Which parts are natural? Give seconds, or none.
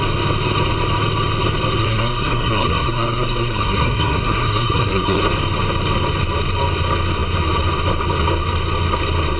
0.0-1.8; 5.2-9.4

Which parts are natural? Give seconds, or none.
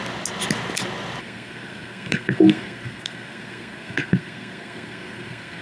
0.0-1.2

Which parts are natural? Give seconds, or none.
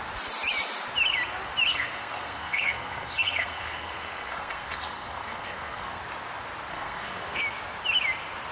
0.0-1.7; 6.0-6.7; 7.4-8.5